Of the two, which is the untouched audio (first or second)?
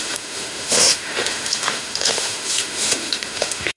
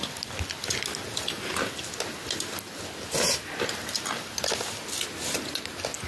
second